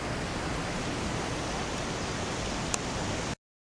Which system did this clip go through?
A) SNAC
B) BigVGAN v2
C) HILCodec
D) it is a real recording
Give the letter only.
D